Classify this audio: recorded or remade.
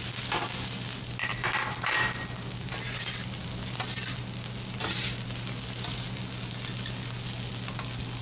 recorded